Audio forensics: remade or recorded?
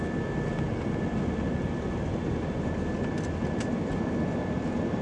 recorded